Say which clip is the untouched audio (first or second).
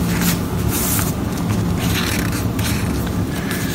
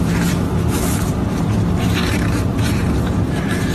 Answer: first